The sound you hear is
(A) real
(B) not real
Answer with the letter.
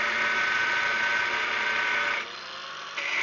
A